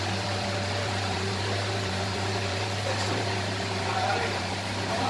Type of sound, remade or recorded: remade